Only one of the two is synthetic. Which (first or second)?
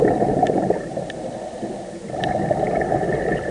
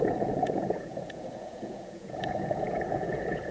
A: second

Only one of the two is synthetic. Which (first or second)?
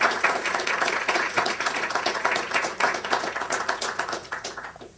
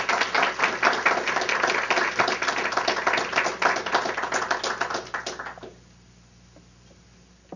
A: first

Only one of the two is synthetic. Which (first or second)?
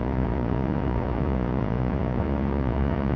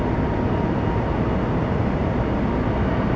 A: first